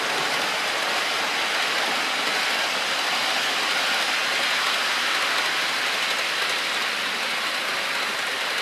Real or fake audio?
real